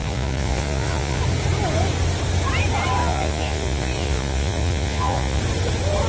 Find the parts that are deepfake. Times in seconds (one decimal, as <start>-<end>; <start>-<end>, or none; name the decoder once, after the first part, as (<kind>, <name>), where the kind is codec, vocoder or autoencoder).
0.0-1.2 (vocoder, Vocos); 3.0-5.4

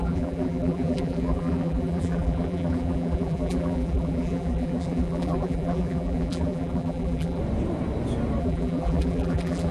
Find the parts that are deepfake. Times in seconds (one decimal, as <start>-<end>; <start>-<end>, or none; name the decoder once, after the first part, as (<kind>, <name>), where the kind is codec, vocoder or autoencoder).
0.0-7.4 (vocoder, BigVGAN v2); 8.4-9.7

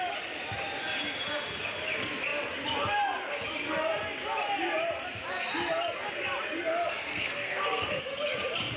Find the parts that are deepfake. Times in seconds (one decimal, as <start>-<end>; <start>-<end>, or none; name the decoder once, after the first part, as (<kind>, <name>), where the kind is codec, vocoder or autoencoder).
7.1-8.0 (codec, SNAC)

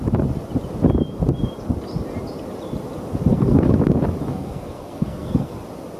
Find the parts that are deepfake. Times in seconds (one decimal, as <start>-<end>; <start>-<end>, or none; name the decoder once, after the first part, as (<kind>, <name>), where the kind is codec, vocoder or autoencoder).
3.3-3.8 (codec, SNAC); 4.3-5.6

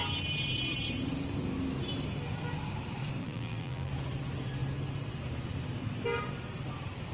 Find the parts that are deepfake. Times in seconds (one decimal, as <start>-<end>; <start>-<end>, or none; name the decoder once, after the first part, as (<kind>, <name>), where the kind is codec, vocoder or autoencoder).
3.2-3.9 (vocoder, BigVGAN v2)